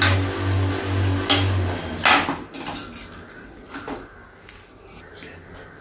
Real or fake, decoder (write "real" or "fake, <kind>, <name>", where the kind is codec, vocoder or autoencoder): real